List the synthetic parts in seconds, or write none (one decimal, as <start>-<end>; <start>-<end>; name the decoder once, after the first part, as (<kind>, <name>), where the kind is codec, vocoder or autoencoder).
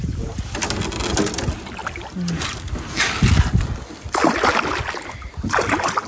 none